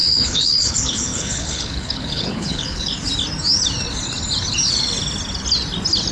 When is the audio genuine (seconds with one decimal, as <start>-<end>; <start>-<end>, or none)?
2.9-6.1